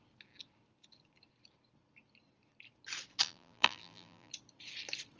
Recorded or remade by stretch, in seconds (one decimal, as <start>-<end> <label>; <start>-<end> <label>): 0.0-3.2 recorded; 3.2-4.3 remade; 4.3-5.2 recorded